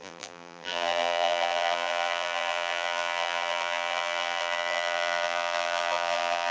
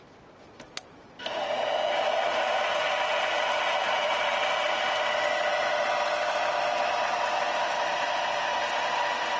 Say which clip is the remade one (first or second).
first